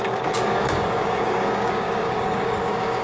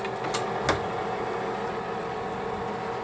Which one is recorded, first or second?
second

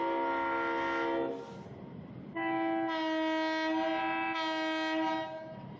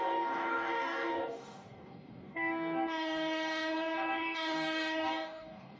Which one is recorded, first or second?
first